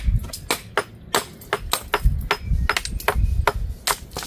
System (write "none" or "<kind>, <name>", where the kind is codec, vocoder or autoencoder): none